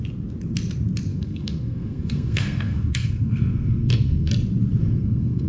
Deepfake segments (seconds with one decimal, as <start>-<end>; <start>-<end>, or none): 1.1-4.3; 4.8-5.5